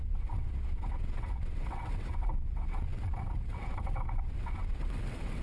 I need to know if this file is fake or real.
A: fake